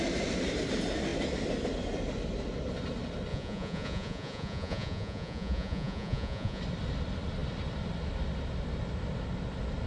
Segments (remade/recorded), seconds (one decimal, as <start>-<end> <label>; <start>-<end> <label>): 0.0-3.3 recorded; 3.3-6.6 remade; 6.6-9.9 recorded